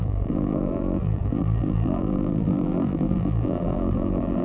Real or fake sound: fake